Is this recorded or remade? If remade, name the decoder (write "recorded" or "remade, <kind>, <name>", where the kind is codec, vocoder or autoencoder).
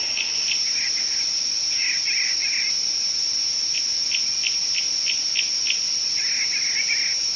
recorded